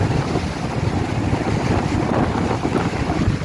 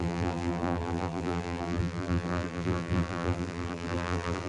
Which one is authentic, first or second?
first